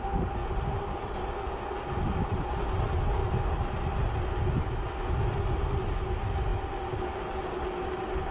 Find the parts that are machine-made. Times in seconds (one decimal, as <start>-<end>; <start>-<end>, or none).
none